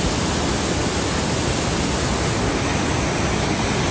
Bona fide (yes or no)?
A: yes